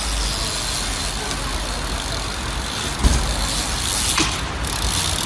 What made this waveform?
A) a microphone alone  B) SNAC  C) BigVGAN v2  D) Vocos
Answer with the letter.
A